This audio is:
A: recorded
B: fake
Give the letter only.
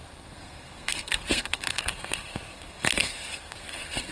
B